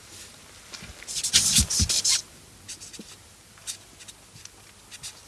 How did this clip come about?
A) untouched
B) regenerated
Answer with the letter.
A